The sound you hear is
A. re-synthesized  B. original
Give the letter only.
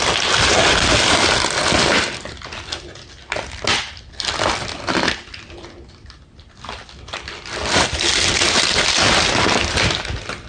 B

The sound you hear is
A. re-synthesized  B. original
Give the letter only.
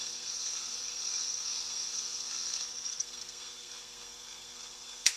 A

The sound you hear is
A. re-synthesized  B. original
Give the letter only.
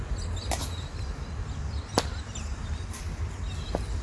B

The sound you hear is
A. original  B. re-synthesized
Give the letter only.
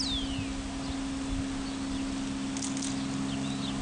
A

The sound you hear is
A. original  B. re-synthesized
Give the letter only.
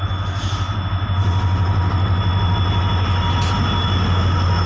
A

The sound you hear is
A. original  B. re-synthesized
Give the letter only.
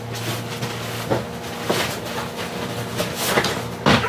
A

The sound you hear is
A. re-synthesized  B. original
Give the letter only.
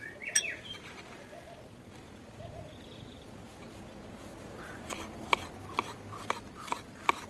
B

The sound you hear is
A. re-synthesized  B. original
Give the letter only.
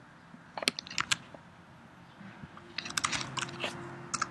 B